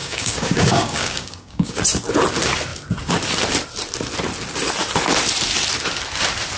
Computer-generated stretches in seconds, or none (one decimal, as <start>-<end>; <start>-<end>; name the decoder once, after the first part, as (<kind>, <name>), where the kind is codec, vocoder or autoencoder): 0.0-1.8 (codec, DAC)